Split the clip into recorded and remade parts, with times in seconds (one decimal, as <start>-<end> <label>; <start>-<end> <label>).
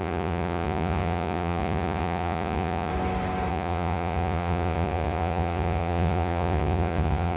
0.0-2.9 remade; 2.9-3.5 recorded; 3.5-7.4 remade